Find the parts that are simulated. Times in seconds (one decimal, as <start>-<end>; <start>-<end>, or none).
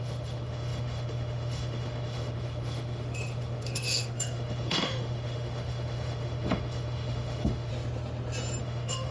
0.0-7.7; 8.6-9.1